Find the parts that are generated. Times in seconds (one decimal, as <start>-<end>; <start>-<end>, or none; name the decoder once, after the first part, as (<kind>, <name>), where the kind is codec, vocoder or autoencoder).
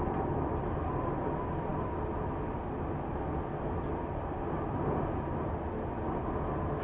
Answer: none